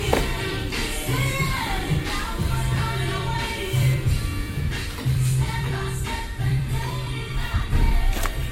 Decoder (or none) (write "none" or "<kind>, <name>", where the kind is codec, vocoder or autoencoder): vocoder, BigVGAN v2